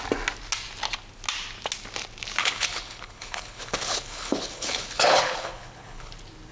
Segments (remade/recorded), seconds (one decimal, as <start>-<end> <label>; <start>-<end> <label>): 0.0-2.4 recorded; 2.4-6.1 remade; 6.1-6.5 recorded